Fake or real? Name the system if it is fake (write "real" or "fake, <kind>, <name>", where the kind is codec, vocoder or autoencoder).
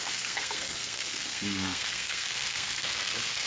fake, codec, SNAC